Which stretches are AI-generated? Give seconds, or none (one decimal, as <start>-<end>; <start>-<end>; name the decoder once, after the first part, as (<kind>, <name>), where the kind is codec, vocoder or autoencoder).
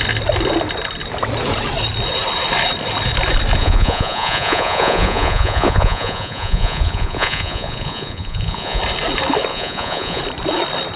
3.6-8.8 (vocoder, Vocos); 9.5-10.2